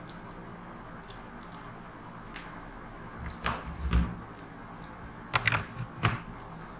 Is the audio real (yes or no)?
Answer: yes